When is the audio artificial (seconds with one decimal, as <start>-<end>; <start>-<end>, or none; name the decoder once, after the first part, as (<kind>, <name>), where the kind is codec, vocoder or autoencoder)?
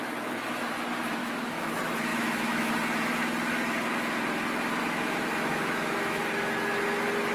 1.2-1.7 (autoencoder, DAC-VAE); 2.1-2.7; 4.8-6.2